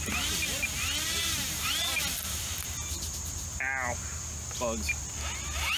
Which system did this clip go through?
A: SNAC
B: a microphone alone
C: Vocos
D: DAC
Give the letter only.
B